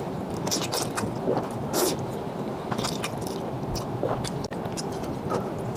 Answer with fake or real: real